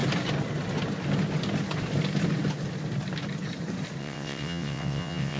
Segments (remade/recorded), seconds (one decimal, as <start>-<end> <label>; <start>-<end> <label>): 0.0-4.0 recorded; 4.0-5.4 remade